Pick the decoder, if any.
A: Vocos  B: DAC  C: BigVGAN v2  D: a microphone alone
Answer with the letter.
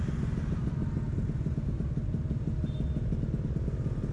D